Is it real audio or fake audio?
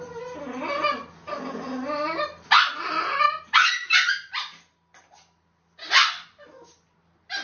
real